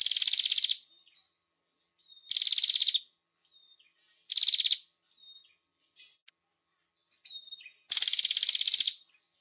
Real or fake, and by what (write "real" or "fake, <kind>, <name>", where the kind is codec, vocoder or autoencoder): real